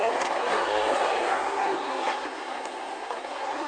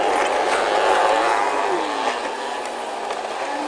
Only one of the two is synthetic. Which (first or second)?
first